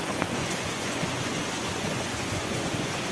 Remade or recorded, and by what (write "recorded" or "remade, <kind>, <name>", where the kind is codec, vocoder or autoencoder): remade, vocoder, Vocos